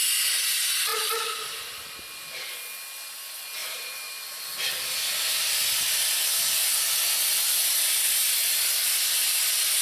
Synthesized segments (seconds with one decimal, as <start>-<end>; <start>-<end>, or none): 0.9-1.6; 3.6-4.5